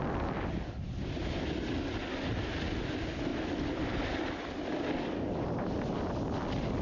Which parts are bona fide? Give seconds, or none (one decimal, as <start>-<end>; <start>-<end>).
0.0-6.8